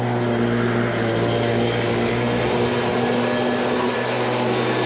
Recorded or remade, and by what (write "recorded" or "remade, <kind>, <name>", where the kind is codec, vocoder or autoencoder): recorded